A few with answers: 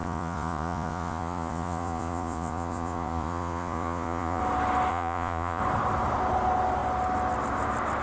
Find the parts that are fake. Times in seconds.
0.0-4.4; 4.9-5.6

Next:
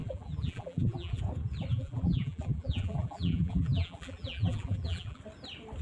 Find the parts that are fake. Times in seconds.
0.0-1.2; 1.7-5.2

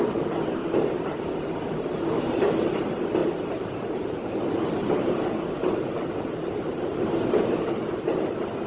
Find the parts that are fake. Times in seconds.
0.6-2.0; 3.2-7.1

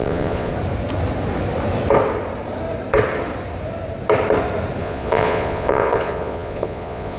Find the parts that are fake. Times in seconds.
0.0-0.5; 4.8-7.2

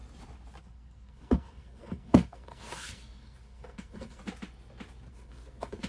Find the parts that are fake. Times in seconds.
0.6-4.2; 5.1-5.9

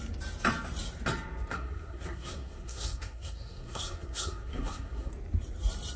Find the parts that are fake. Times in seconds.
1.5-5.1

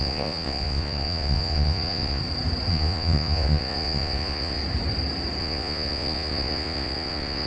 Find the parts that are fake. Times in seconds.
0.0-2.2; 2.7-4.6; 5.4-7.5